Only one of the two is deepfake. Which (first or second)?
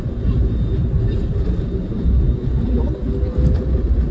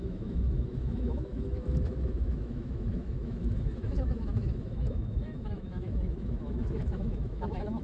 second